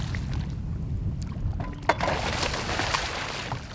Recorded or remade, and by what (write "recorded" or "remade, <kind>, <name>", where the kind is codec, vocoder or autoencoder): recorded